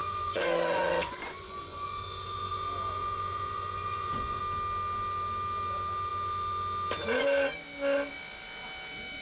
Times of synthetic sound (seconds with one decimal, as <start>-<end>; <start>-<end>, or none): 0.0-4.4